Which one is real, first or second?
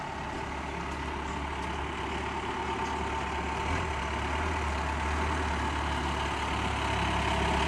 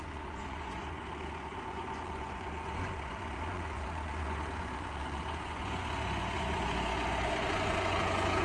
first